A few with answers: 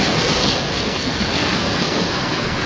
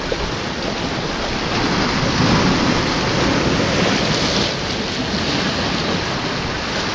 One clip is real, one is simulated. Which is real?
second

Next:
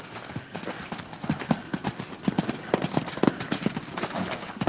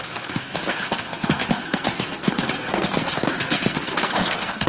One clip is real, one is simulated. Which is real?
first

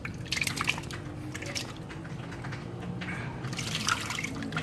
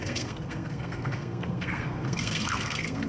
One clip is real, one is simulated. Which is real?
first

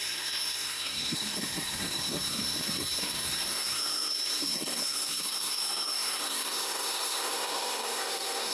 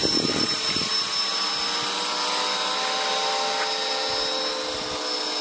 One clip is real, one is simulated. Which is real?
second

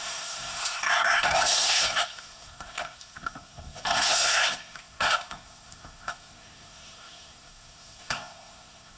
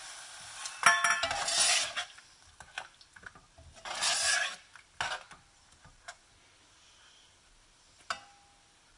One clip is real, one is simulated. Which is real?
second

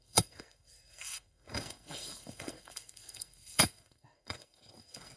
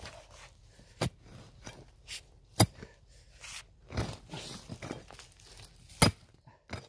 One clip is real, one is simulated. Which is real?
second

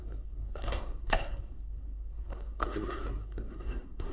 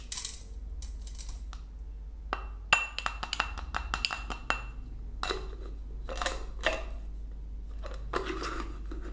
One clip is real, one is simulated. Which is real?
second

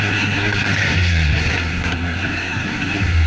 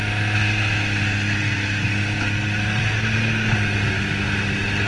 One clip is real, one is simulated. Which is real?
second